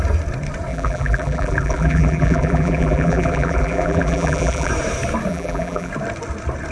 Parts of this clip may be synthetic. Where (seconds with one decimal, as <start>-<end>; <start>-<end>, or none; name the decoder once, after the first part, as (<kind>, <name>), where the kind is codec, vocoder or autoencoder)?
0.7-4.7 (vocoder, BigVGAN v2); 5.3-5.9